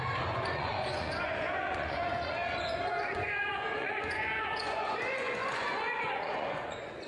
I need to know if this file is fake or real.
fake